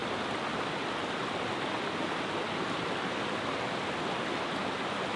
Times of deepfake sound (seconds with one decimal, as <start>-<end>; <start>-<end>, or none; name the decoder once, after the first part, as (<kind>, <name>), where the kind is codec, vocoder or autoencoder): none